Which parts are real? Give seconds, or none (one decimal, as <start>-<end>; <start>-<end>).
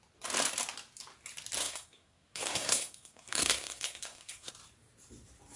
0.0-1.6; 4.5-5.6